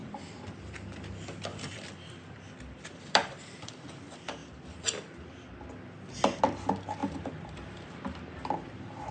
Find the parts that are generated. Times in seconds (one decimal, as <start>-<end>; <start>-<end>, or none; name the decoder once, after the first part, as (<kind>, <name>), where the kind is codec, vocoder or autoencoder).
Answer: 0.0-0.5 (vocoder, BigVGAN v2); 1.5-3.7; 7.0-8.5